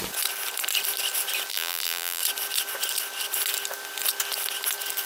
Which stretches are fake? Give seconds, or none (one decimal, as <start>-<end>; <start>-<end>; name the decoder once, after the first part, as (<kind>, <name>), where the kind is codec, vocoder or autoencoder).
1.5-2.2 (vocoder, BigVGAN v2)